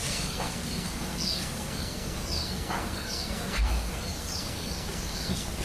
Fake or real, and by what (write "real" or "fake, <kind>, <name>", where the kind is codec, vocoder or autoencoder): fake, codec, SNAC